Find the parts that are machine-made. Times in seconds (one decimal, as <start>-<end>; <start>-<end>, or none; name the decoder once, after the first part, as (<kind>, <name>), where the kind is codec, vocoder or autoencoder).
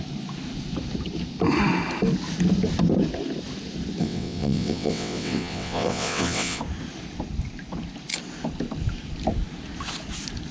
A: 4.0-6.6 (vocoder, WaveNeXt)